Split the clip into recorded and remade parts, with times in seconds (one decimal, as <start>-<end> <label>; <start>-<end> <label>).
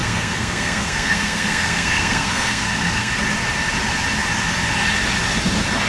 0.0-3.1 remade; 3.1-5.9 recorded